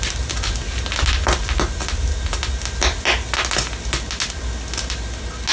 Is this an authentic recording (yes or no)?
yes